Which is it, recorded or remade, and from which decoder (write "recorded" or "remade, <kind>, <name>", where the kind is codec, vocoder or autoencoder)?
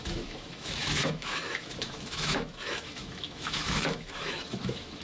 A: remade, autoencoder, DAC-VAE